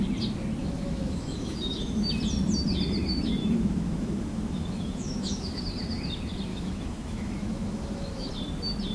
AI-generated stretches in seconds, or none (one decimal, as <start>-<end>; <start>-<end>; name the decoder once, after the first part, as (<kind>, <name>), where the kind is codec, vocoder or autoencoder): 0.6-2.1 (autoencoder, DAC-VAE); 3.4-5.6; 6.5-8.3